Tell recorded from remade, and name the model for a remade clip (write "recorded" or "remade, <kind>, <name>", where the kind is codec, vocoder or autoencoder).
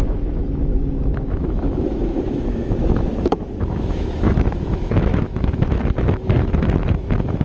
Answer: remade, autoencoder, DAC-VAE